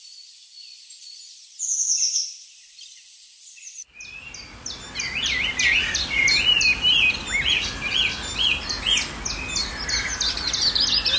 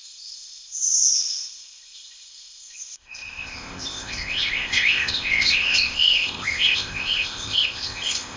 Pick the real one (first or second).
first